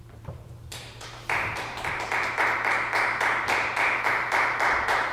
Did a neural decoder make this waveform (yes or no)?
yes